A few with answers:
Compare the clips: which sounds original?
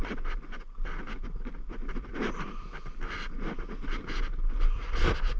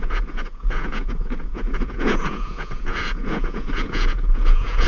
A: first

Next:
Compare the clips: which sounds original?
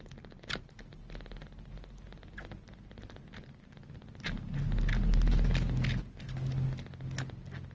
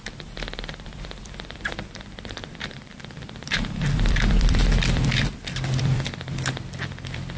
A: first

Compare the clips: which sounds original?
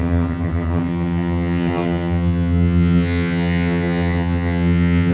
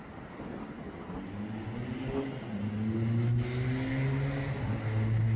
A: second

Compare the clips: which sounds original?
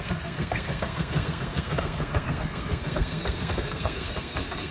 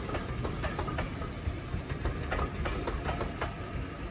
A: second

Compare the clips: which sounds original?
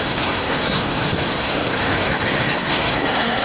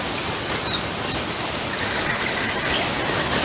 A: second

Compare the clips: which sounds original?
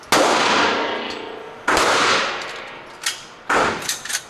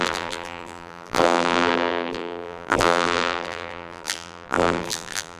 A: first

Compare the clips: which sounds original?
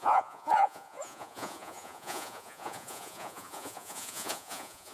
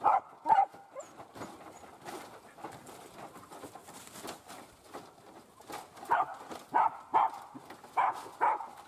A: second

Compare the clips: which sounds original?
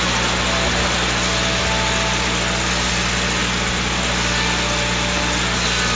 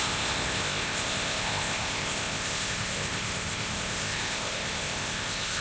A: first